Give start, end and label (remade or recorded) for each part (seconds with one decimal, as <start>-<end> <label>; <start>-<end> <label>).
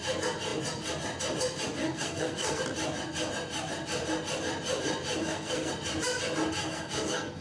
0.0-1.8 recorded; 1.8-2.6 remade; 2.6-5.2 recorded; 5.2-5.7 remade; 5.7-6.6 recorded; 6.6-7.4 remade